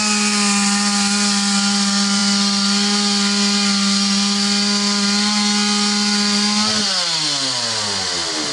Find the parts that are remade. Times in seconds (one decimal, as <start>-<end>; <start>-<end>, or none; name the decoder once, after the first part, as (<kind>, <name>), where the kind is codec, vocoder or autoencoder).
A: none